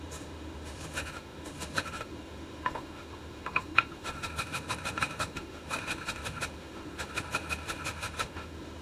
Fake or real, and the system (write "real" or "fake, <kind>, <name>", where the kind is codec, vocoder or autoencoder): fake, autoencoder, DAC-VAE